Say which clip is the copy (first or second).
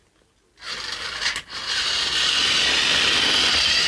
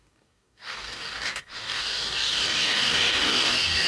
second